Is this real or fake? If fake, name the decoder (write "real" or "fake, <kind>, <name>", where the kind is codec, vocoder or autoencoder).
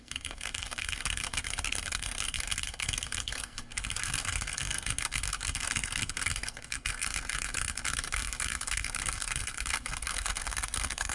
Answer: fake, codec, SNAC